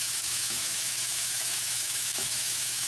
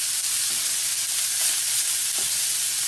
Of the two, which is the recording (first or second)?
second